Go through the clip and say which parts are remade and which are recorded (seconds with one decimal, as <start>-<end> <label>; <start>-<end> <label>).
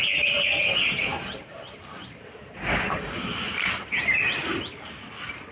0.0-5.5 recorded